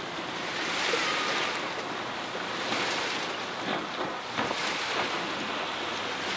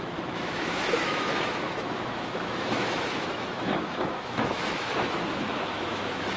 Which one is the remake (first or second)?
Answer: second